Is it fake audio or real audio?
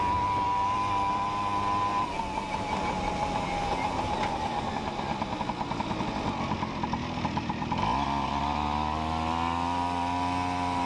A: real